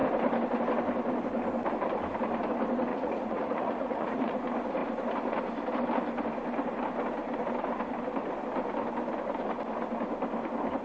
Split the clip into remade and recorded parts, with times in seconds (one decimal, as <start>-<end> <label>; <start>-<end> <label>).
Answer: 0.0-2.9 recorded; 2.9-4.3 remade; 4.3-10.8 recorded